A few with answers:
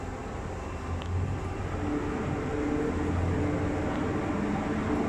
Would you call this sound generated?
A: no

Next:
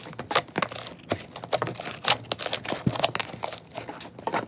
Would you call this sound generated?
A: no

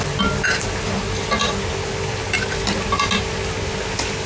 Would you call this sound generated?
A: no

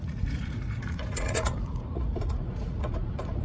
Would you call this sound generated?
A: yes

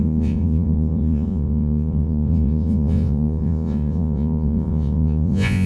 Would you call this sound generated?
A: yes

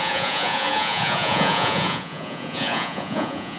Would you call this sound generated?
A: yes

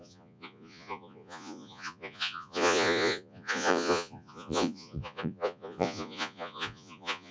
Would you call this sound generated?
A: yes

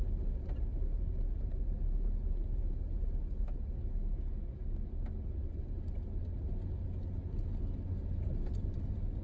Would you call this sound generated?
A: no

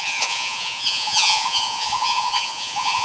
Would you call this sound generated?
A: yes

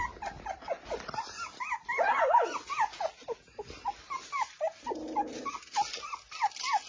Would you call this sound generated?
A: no